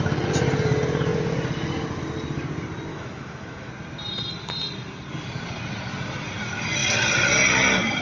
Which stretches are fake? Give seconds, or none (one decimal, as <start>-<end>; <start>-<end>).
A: 2.9-3.7